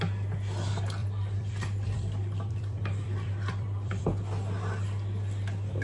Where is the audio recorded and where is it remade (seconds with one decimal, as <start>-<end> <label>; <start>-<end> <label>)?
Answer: 0.0-1.0 recorded; 1.0-4.0 remade; 4.0-5.8 recorded